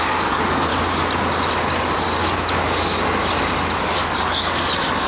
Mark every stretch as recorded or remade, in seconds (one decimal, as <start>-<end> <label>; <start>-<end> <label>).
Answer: 0.0-0.7 remade; 0.7-3.8 recorded; 3.8-5.1 remade